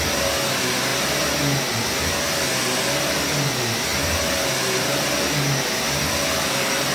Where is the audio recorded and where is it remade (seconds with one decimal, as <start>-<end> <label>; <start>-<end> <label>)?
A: 0.0-6.9 recorded